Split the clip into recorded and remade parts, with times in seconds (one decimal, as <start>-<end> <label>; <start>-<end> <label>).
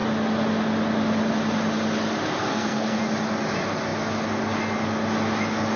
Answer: 0.0-2.4 recorded; 2.4-3.0 remade; 3.0-5.8 recorded